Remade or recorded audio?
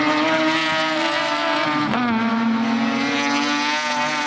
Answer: recorded